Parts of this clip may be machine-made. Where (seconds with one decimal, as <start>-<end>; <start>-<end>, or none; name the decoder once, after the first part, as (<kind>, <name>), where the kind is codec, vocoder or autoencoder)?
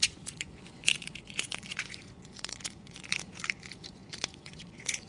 0.0-5.1 (vocoder, Vocos)